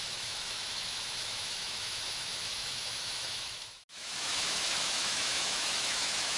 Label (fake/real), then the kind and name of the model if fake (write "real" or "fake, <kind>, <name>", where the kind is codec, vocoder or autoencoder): fake, autoencoder, DAC-VAE